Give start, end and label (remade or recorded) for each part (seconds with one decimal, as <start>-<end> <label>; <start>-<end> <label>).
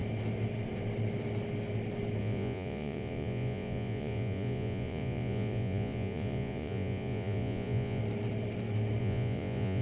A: 0.0-2.2 recorded; 2.2-8.0 remade; 8.0-9.0 recorded; 9.0-9.8 remade